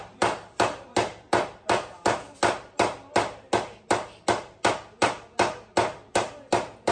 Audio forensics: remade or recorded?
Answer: recorded